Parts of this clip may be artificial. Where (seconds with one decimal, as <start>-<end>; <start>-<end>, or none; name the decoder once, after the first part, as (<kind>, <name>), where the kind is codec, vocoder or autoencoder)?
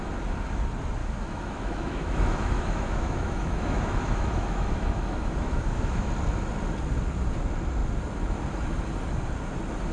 1.0-6.1 (autoencoder, DAC-VAE)